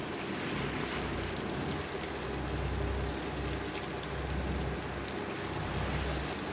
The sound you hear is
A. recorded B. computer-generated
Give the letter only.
A